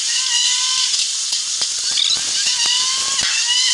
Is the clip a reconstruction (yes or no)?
no